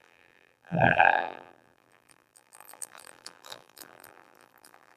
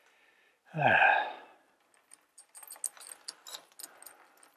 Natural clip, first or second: second